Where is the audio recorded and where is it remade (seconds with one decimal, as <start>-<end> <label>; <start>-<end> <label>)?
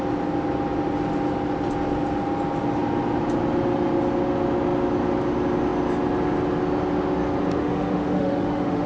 0.0-7.6 recorded; 7.6-8.9 remade